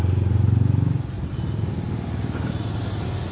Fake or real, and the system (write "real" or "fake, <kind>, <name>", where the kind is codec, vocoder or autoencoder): real